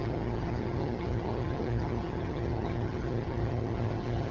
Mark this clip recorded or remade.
remade